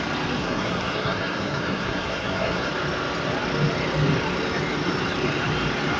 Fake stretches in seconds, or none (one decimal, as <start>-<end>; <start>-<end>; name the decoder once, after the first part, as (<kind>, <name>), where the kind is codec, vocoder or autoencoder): 0.4-2.7 (codec, SNAC)